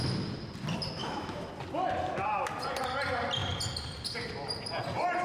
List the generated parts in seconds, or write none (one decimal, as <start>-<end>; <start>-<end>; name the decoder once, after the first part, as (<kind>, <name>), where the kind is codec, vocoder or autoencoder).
1.0-1.5 (autoencoder, DAC-VAE)